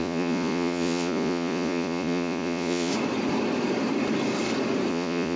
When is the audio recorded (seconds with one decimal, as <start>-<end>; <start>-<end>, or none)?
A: 2.9-4.9